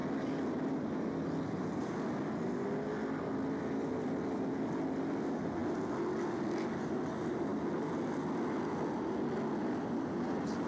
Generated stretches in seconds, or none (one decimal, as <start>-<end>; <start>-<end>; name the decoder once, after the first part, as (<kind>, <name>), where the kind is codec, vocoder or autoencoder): none